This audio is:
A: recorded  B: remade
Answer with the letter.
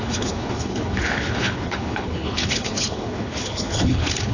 B